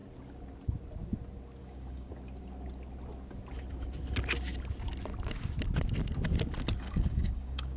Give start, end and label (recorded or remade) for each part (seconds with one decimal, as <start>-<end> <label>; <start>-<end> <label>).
0.0-1.6 recorded; 1.6-2.1 remade; 2.1-6.8 recorded; 6.8-7.8 remade